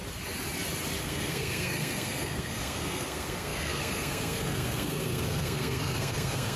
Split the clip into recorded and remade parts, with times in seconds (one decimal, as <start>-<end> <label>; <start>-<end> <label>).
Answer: 0.0-1.0 recorded; 1.0-6.6 remade